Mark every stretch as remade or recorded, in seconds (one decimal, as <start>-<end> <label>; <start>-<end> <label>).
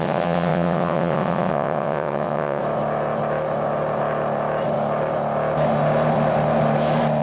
0.0-2.6 remade; 2.6-7.2 recorded